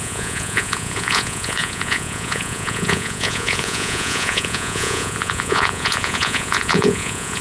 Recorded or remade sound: remade